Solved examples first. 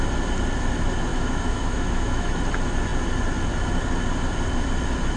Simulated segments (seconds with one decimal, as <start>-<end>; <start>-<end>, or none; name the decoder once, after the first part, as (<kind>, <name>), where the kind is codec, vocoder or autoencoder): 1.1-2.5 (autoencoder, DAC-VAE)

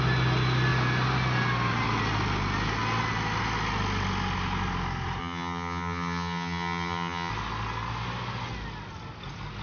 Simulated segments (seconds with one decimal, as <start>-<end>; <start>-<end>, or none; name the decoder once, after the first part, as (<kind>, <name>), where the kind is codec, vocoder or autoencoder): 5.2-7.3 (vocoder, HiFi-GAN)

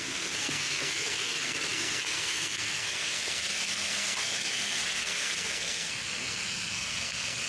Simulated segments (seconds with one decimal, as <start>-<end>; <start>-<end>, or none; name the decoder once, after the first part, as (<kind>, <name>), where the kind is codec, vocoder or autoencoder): 0.0-7.5 (codec, SNAC)

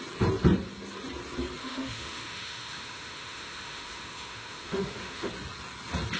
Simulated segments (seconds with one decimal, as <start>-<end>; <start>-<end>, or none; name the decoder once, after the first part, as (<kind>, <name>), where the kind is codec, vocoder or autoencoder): 1.6-5.3 (autoencoder, DAC-VAE)